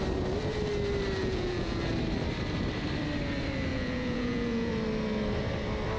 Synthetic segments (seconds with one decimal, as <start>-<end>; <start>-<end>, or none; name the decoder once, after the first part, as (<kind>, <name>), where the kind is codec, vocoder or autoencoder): 1.2-1.8 (vocoder, Vocos); 3.7-4.7

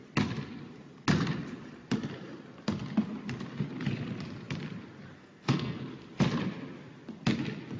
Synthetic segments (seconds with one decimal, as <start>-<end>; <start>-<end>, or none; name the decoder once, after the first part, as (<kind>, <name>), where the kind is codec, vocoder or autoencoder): 5.2-5.8 (codec, SNAC)